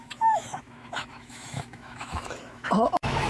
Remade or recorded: remade